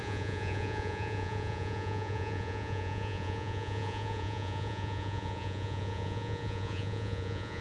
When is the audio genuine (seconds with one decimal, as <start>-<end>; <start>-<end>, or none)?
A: none

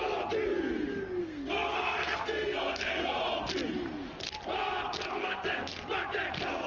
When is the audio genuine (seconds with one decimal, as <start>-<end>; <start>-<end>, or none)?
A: 0.0-1.2; 3.2-5.2; 5.7-6.7

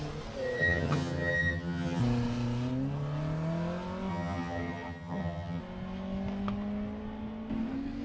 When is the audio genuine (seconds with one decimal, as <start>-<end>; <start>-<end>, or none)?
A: 0.0-0.6; 2.0-4.1; 5.6-8.0

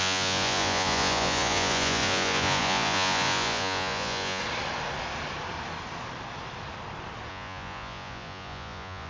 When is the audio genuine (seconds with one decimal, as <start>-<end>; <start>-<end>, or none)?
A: 4.4-7.3

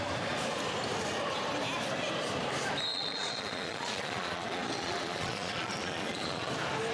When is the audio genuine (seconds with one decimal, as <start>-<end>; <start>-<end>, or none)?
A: 0.0-2.9; 6.5-6.9

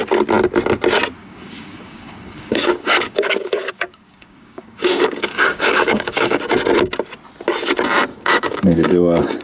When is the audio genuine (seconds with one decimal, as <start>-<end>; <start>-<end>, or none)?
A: 0.0-1.2; 6.4-8.1

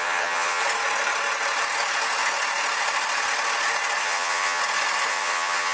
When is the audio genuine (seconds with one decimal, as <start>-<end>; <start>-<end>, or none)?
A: 0.6-4.0; 4.6-5.1

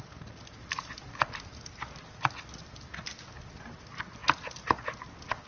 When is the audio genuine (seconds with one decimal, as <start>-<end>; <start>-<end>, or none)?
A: 0.0-5.5